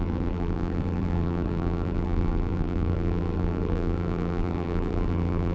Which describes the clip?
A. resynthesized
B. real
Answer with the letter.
A